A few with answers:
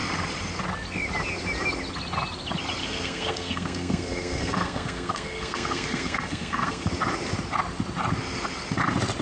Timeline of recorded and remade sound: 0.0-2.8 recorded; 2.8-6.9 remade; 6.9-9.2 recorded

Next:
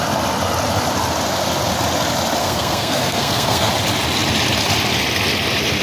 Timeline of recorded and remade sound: 0.0-2.4 recorded; 2.4-3.7 remade; 3.7-5.8 recorded

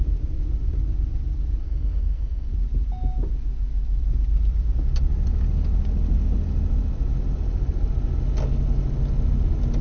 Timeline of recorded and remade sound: 0.0-1.6 recorded; 1.6-2.5 remade; 2.5-9.8 recorded

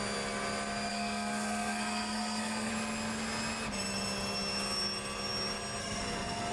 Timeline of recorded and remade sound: 0.0-0.9 recorded; 0.9-2.7 remade; 2.7-5.8 recorded; 5.8-6.5 remade

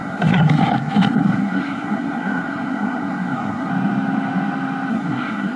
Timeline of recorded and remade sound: 0.0-3.7 remade; 3.7-4.9 recorded; 4.9-5.6 remade